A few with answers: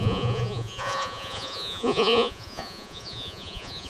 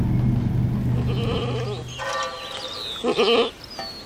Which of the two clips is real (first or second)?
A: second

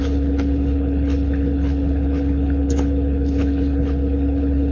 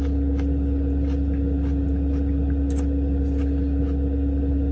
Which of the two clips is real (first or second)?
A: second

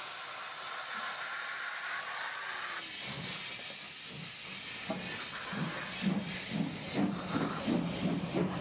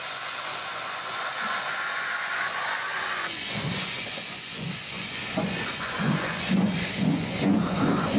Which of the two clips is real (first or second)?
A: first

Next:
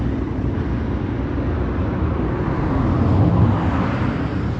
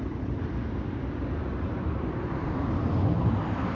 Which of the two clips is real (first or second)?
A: first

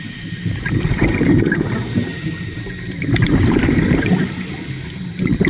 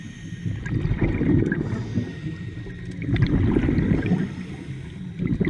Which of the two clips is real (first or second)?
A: second